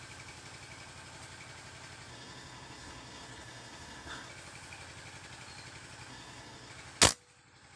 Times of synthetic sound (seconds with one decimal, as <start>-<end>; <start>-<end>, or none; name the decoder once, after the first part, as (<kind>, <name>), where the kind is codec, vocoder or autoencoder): 2.1-4.3 (codec, SNAC); 6.1-6.7

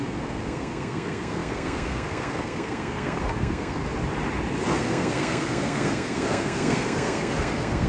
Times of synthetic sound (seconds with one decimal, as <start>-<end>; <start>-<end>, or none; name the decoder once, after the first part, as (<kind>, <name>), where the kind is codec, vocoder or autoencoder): 0.0-3.8 (codec, SNAC); 4.7-7.9

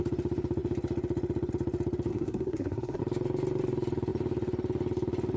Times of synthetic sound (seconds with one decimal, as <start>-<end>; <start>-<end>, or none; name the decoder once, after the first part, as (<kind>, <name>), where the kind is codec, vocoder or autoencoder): 2.1-3.0 (codec, SNAC)

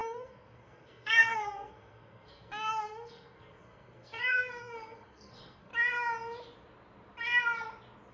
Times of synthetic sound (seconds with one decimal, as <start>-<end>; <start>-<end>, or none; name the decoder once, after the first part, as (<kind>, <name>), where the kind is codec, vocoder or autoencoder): 0.0-5.7 (codec, SNAC)